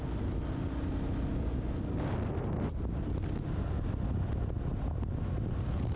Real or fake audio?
real